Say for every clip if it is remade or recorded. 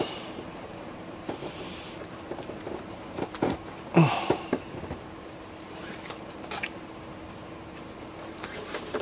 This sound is remade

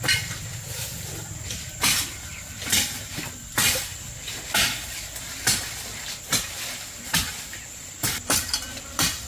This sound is remade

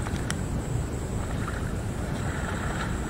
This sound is remade